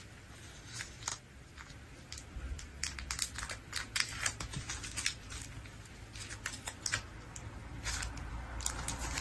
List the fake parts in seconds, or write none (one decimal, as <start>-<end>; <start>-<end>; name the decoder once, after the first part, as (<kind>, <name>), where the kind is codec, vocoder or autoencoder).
3.6-4.7 (vocoder, BigVGAN v2)